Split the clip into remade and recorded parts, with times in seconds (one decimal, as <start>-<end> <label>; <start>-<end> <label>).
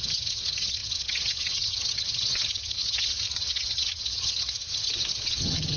0.0-5.8 remade